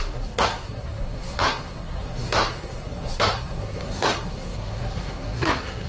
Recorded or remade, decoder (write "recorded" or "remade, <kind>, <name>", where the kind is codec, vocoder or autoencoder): remade, codec, SNAC